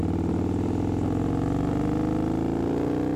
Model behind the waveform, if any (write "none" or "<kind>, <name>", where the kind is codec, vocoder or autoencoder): none